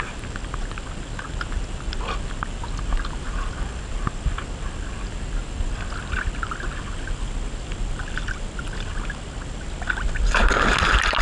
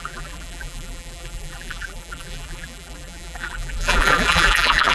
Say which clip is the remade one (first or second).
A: second